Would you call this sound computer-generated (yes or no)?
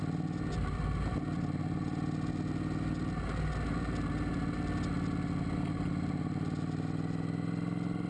no